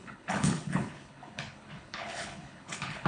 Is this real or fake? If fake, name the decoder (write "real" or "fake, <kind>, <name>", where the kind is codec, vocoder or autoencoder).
fake, codec, HILCodec